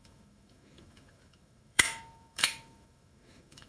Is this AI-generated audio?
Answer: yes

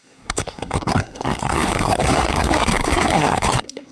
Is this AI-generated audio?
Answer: yes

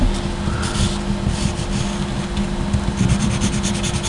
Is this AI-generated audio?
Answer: no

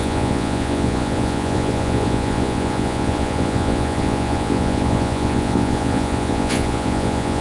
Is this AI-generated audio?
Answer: yes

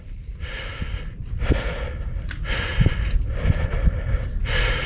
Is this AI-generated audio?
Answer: no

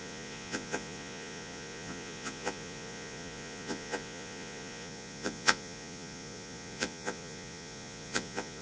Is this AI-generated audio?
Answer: yes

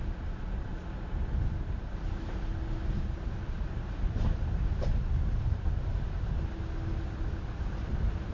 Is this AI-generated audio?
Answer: no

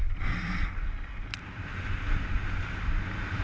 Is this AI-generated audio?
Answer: no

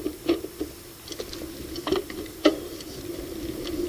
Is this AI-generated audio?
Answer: no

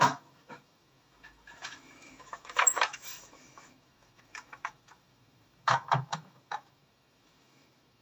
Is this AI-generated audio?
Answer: yes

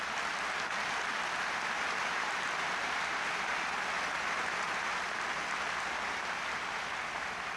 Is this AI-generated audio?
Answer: no